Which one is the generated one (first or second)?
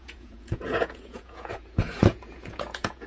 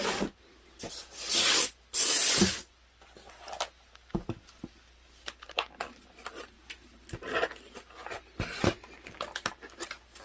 first